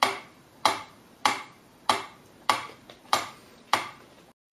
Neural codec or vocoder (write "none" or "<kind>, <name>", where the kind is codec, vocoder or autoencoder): vocoder, BigVGAN v2